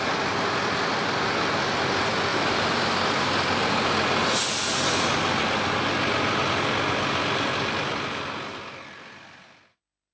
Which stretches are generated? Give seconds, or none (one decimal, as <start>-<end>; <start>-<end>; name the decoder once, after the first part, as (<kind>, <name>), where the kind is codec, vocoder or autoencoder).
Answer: 2.3-3.3 (vocoder, BigVGAN v2)